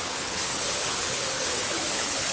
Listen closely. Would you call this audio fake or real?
fake